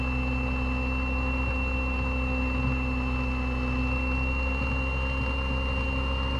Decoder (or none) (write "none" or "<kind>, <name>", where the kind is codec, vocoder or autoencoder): none